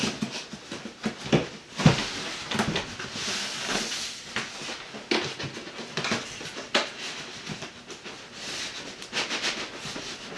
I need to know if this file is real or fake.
real